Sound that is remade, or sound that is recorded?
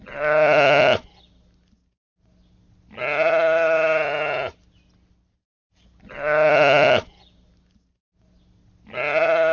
recorded